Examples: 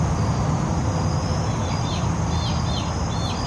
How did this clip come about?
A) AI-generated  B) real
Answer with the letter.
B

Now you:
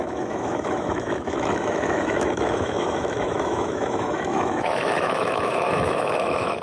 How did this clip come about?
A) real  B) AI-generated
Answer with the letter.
B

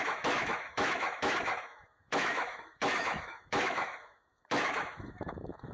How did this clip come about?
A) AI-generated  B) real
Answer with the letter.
A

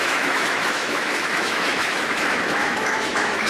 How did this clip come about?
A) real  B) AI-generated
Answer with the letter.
B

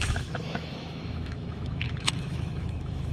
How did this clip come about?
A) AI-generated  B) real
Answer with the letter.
A